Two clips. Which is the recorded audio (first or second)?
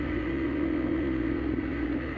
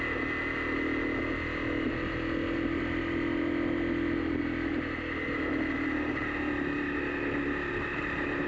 second